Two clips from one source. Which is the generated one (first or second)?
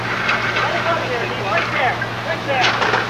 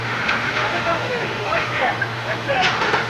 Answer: second